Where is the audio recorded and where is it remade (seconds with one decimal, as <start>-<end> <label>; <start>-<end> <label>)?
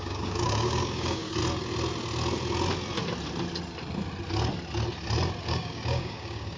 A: 0.0-1.4 remade; 1.4-5.4 recorded; 5.4-6.6 remade